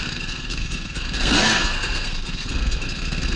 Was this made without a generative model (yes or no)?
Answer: no